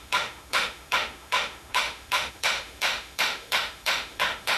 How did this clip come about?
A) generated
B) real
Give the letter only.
A